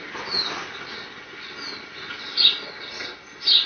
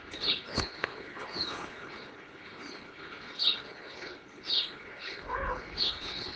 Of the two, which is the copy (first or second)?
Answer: second